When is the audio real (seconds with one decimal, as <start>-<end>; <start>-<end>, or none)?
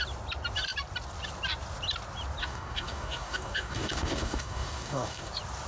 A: 0.0-2.4; 5.3-5.7